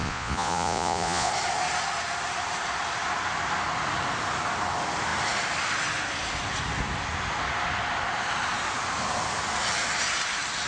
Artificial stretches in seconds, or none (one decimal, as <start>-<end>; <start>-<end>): 0.0-1.3